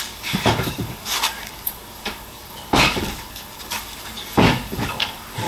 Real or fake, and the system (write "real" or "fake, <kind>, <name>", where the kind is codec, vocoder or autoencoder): fake, codec, DAC